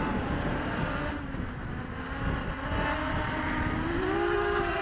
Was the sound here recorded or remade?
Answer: recorded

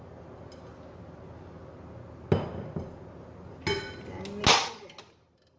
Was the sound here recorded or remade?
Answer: recorded